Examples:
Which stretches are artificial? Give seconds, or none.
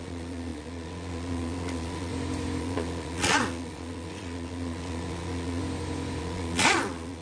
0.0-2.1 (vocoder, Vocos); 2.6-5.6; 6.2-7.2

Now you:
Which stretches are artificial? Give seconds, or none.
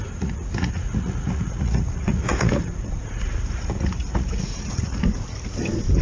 0.0-5.0 (vocoder, Vocos)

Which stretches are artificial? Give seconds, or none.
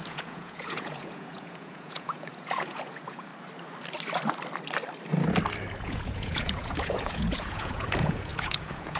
0.0-3.3 (vocoder, Vocos); 5.8-9.0